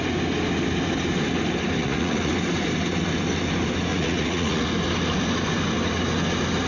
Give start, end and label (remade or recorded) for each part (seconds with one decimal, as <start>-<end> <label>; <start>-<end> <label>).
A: 0.0-1.8 recorded; 1.8-2.3 remade; 2.3-3.9 recorded; 3.9-4.7 remade; 4.7-6.7 recorded